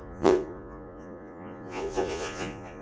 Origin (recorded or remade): remade